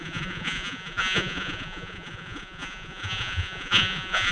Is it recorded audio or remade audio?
remade